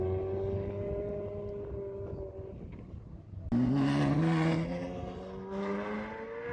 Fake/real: real